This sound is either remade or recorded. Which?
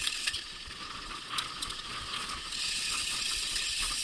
remade